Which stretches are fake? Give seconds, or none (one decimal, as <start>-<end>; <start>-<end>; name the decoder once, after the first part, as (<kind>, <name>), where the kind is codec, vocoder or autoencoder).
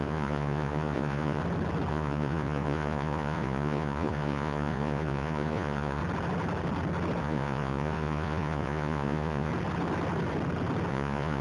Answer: 0.0-1.4 (vocoder, Vocos); 1.9-6.0; 7.2-9.5; 10.9-11.4